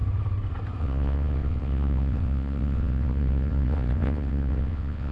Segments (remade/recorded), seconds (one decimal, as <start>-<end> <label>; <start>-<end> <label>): 0.0-0.8 recorded; 0.8-5.1 remade